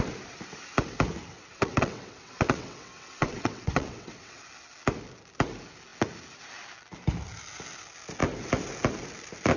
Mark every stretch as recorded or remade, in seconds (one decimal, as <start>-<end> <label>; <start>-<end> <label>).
0.0-1.3 recorded; 1.3-4.4 remade; 4.4-9.6 recorded